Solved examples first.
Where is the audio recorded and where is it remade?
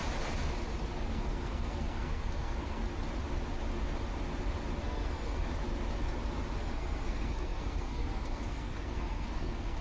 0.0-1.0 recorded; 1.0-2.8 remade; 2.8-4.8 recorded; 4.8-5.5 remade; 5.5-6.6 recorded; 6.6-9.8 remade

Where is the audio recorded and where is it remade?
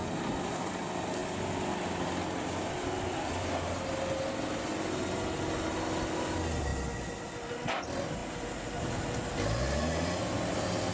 0.0-10.9 recorded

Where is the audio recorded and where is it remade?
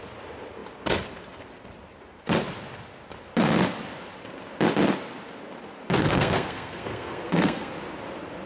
0.0-6.0 recorded; 6.0-7.7 remade; 7.7-8.5 recorded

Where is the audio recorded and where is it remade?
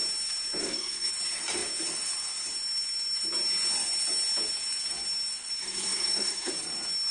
0.0-0.6 recorded; 0.6-1.1 remade; 1.1-5.6 recorded; 5.6-6.5 remade; 6.5-7.1 recorded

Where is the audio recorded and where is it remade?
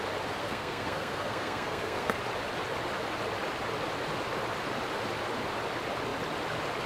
0.0-0.4 recorded; 0.4-2.2 remade; 2.2-6.9 recorded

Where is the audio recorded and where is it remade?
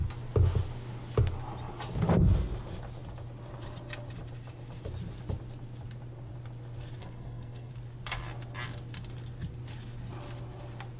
0.0-7.0 recorded; 7.0-7.7 remade; 7.7-11.0 recorded